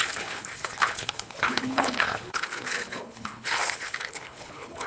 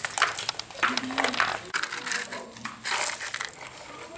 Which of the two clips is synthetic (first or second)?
first